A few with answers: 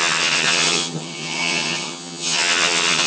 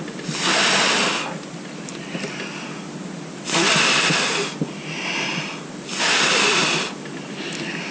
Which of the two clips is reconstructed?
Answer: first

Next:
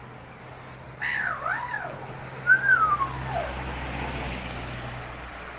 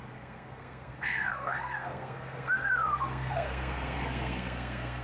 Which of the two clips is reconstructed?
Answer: second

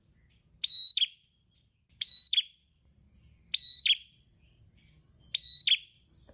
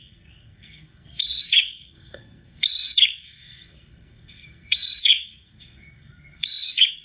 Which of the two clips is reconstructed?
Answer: second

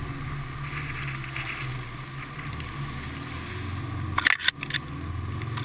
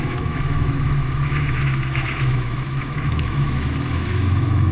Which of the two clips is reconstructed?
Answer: second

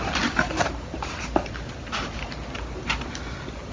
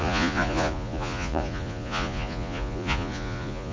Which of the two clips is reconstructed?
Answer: second